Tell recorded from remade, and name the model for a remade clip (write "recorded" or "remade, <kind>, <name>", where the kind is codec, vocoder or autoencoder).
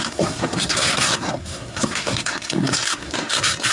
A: remade, codec, SNAC